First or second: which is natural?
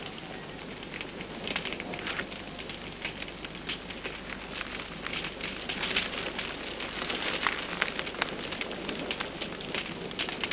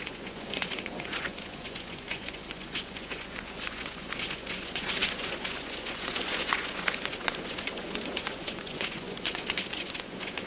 first